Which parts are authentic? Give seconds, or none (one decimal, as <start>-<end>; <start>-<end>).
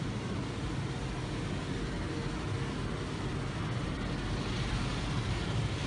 1.0-4.5